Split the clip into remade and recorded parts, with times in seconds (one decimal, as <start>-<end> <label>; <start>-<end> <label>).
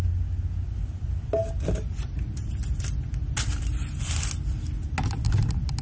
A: 0.0-5.8 recorded